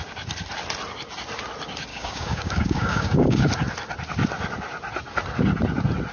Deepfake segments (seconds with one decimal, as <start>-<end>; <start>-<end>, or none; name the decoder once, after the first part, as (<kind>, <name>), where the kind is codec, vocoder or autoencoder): 1.9-3.5 (codec, DAC)